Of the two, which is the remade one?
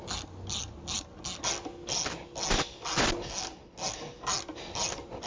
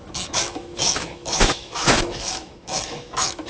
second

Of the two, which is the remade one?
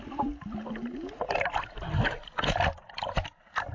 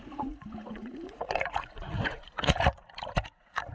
second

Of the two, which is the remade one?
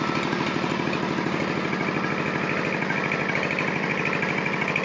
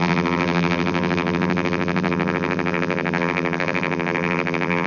second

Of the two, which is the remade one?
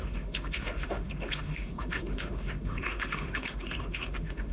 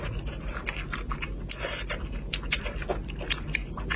first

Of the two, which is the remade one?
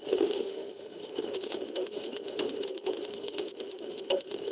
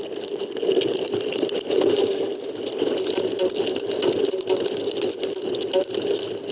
first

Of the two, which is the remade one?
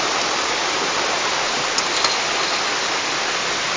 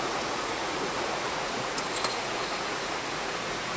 second